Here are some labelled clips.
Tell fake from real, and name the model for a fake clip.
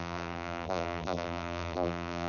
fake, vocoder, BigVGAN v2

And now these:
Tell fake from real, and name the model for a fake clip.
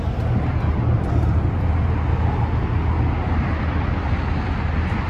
real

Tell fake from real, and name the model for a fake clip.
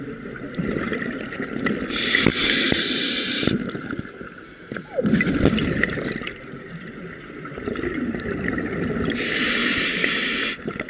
real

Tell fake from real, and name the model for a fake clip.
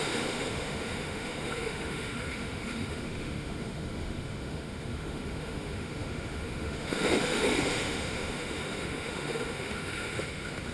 fake, autoencoder, DAC-VAE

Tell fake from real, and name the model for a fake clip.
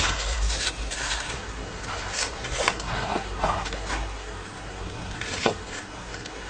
fake, codec, SNAC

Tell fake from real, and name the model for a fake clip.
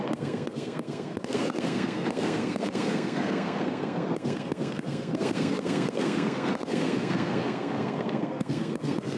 fake, codec, SNAC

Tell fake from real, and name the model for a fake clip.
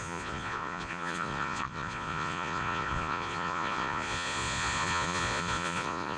fake, vocoder, Vocos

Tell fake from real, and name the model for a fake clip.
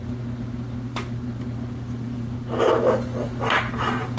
real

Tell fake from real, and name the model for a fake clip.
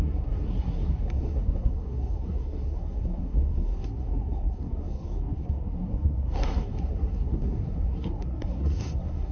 fake, codec, SNAC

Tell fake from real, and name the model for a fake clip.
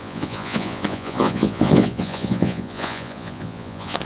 fake, vocoder, Vocos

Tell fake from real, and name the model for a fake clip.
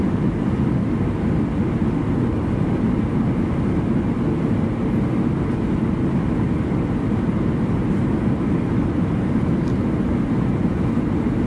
real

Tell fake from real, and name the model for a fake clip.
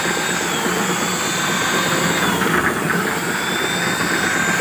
fake, vocoder, BigVGAN v2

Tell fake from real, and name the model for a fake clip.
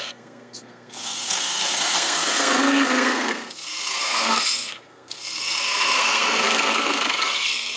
fake, codec, SNAC